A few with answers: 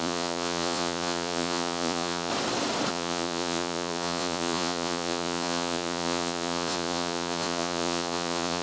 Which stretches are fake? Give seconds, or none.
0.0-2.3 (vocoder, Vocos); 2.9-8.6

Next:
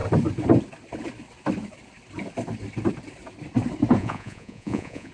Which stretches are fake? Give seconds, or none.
4.0-5.1 (vocoder, Vocos)

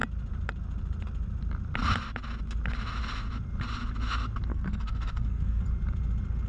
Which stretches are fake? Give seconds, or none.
4.5-5.6 (codec, SNAC)

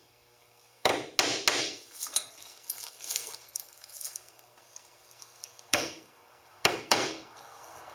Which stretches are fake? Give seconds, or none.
0.0-0.9 (codec, SNAC); 1.6-7.9

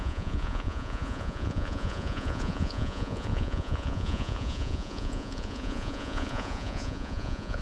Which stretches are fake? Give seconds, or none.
0.0-7.6 (vocoder, Vocos)

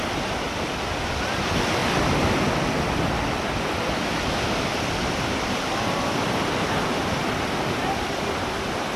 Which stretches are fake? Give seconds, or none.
none